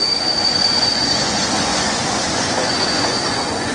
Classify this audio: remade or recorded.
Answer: remade